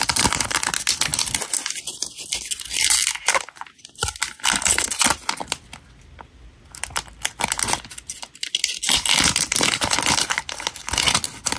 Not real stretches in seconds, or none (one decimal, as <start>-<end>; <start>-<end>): none